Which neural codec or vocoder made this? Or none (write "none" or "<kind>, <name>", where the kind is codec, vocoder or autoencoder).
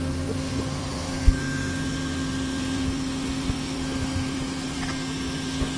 none